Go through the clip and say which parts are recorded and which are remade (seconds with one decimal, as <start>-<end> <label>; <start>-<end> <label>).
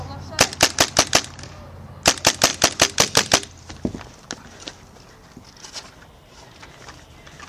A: 0.0-7.5 recorded